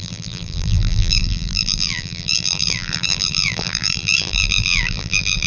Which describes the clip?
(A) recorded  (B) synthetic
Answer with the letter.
B